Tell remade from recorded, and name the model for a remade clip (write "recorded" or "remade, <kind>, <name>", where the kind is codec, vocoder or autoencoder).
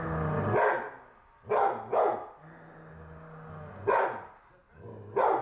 recorded